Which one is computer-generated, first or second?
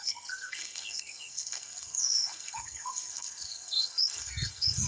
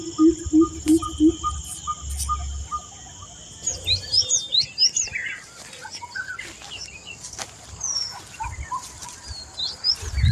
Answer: first